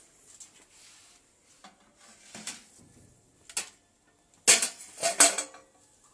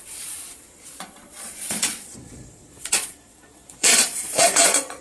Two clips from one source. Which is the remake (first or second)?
second